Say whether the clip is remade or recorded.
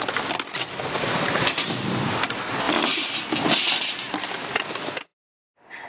recorded